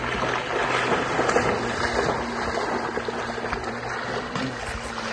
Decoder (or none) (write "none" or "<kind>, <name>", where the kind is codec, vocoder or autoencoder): none